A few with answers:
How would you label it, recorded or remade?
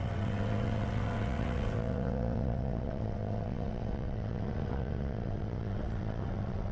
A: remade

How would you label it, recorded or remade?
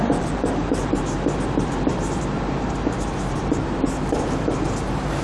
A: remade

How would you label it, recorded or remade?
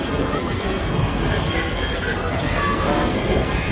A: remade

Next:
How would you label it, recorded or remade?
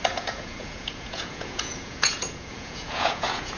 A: remade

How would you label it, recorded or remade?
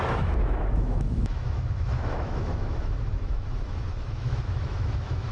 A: remade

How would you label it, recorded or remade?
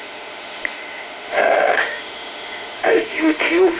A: remade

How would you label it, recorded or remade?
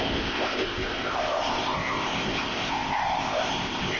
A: remade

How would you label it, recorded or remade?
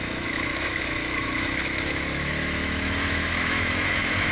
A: remade